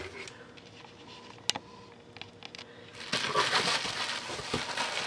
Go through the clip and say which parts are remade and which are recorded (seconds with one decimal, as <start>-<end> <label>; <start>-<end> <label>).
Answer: 0.0-5.1 recorded